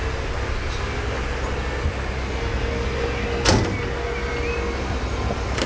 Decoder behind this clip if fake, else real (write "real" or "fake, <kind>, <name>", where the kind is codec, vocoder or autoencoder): real